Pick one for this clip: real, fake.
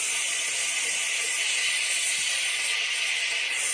real